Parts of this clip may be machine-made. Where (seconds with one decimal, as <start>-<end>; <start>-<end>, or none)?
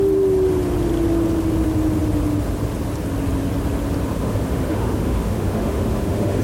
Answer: 4.1-6.4